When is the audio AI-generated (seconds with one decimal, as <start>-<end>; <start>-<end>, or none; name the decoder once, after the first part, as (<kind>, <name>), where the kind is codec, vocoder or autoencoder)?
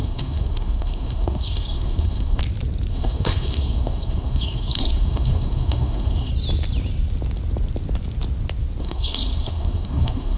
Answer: 0.0-2.4 (codec, SNAC); 2.9-6.3; 8.8-10.4